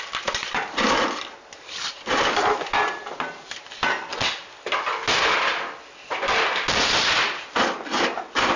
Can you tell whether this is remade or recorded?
recorded